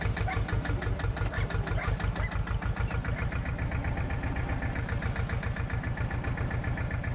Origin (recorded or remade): recorded